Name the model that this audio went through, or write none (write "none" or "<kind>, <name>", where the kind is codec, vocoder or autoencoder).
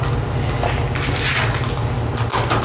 none